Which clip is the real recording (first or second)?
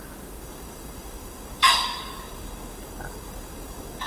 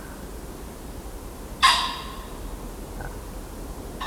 second